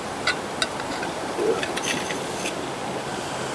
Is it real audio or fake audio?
real